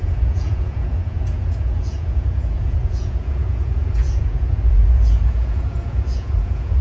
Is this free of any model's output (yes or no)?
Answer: no